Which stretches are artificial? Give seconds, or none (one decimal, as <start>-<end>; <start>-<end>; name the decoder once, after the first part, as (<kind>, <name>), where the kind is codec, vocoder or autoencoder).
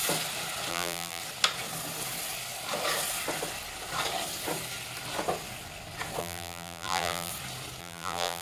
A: 0.7-1.2 (vocoder, BigVGAN v2); 6.2-7.3; 7.8-8.4